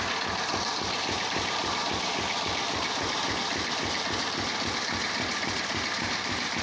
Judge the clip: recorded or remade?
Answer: remade